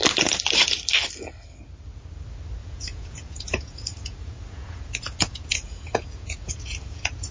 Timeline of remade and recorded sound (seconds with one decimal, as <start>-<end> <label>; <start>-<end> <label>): 0.0-2.6 recorded; 2.6-7.3 remade